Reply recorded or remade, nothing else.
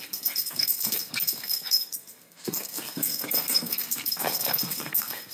remade